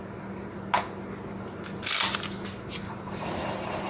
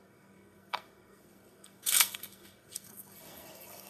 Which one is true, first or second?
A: first